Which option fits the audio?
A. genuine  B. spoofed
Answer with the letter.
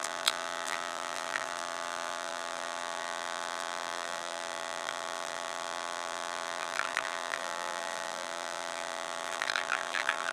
B